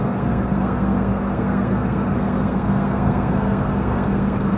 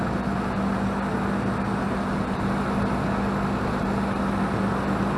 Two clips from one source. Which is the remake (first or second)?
first